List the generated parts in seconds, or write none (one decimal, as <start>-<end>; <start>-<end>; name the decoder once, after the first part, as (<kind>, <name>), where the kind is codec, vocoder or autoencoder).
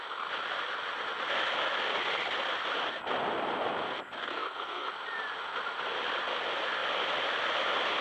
4.2-4.9 (codec, SNAC)